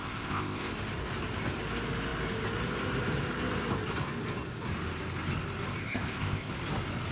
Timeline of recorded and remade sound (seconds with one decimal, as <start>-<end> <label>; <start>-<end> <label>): 0.0-0.7 remade; 0.7-5.8 recorded; 5.8-6.5 remade; 6.5-7.1 recorded